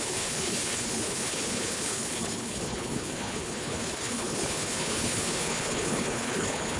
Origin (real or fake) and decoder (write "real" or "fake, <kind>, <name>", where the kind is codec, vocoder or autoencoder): fake, codec, HILCodec